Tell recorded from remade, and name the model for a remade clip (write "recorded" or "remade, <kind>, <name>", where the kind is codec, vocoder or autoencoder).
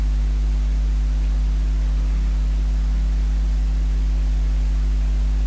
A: recorded